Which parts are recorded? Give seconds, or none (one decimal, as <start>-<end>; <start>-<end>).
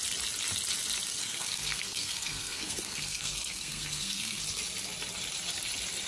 0.0-1.2; 4.4-6.1